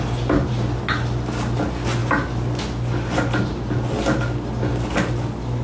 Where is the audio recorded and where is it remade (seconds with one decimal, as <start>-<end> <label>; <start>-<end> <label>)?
0.0-5.6 recorded